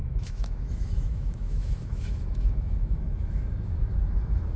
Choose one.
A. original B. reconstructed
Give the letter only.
B